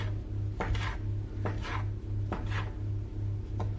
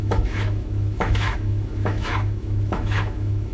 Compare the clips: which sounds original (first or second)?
first